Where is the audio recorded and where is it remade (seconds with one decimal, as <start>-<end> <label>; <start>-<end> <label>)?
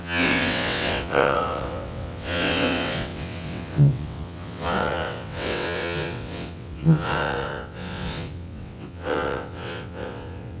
0.0-10.6 remade